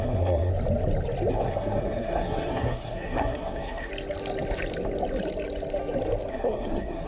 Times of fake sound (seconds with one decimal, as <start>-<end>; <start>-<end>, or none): 0.0-0.5; 1.3-3.9; 6.3-7.1